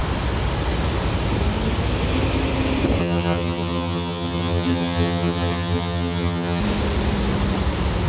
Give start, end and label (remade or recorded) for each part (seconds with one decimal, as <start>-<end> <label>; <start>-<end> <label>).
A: 0.0-3.0 recorded; 3.0-6.6 remade; 6.6-8.1 recorded